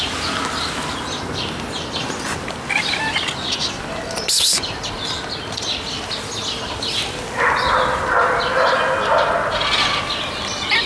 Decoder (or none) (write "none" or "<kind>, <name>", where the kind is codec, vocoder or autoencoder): none